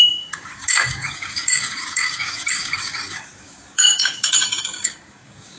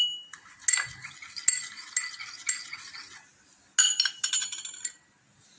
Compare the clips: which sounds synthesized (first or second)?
first